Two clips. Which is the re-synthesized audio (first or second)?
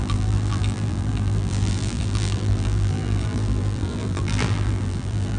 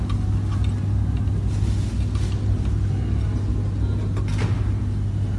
first